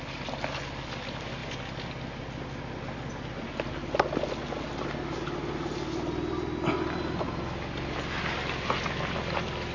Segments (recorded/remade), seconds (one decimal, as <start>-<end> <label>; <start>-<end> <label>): 0.0-9.7 recorded